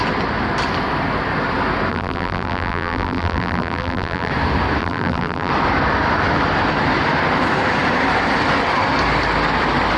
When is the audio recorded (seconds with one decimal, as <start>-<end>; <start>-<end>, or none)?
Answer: 0.0-1.9; 4.3-4.8; 5.5-10.0